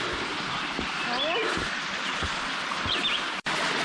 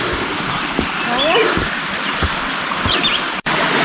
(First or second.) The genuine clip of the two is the first